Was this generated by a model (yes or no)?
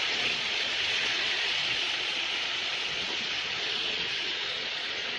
yes